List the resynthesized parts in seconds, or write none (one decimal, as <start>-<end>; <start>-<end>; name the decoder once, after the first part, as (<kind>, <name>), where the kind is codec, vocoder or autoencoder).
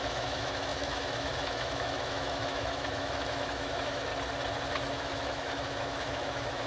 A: 0.0-4.1 (autoencoder, DAC-VAE); 4.7-6.7